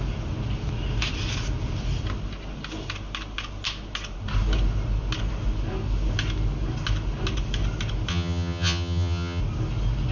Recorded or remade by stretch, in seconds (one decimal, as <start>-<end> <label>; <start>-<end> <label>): 0.0-8.1 recorded; 8.1-9.4 remade; 9.4-10.1 recorded